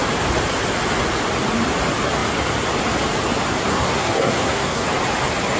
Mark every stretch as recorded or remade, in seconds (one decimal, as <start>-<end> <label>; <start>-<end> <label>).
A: 0.0-3.7 recorded; 3.7-4.9 remade; 4.9-5.6 recorded